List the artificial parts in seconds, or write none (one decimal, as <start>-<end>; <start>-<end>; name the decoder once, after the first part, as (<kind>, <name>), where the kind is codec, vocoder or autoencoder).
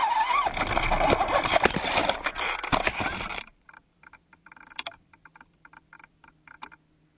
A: 2.0-6.3 (vocoder, BigVGAN v2)